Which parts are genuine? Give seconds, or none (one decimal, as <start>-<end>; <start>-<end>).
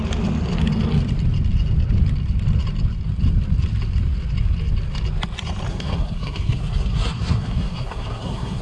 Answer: 0.0-5.7